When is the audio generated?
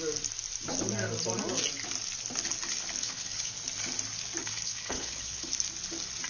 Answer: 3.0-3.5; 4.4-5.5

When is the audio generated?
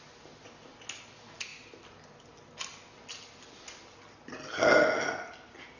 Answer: none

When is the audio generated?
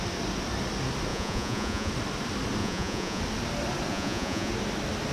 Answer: 1.1-1.9; 2.6-3.2; 3.9-4.5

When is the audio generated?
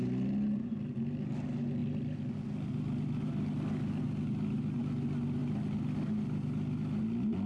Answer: none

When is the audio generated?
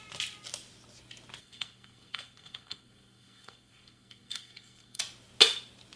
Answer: 1.4-5.0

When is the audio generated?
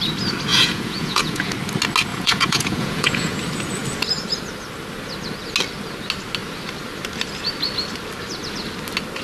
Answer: 0.5-1.5; 2.1-3.4